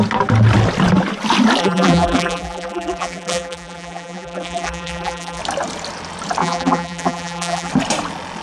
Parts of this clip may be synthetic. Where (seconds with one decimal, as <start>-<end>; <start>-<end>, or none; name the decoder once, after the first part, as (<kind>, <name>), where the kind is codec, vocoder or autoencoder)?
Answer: 1.6-5.4 (vocoder, BigVGAN v2); 6.4-7.7